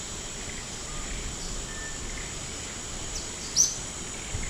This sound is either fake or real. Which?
real